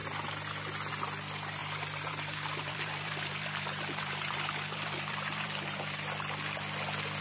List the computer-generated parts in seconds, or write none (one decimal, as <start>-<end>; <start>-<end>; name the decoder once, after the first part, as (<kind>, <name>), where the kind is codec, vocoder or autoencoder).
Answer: 1.6-5.9 (vocoder, BigVGAN v2)